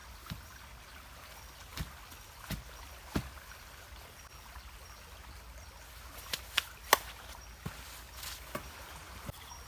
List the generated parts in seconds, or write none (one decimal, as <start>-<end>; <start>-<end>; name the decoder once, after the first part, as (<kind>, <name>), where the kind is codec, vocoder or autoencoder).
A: none